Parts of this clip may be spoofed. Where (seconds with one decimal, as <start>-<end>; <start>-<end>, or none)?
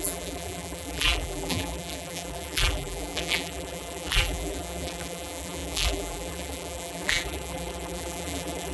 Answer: 0.0-8.7